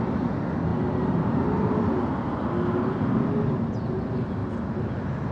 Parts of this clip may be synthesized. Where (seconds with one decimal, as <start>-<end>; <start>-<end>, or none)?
none